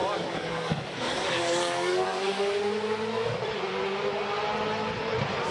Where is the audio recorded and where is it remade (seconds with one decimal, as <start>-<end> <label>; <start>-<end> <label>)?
0.0-2.6 remade; 2.6-5.5 recorded